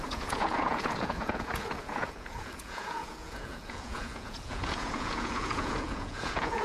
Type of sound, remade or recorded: remade